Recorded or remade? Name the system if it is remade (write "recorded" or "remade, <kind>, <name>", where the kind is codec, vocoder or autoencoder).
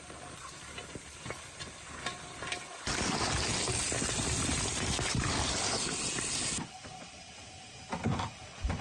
recorded